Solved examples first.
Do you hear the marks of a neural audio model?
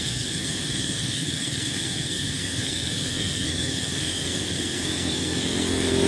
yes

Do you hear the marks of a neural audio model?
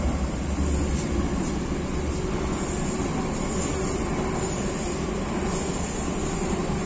no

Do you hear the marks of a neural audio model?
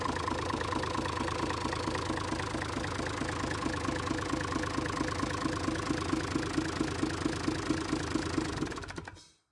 no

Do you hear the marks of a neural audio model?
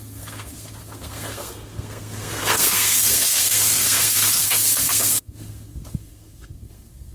yes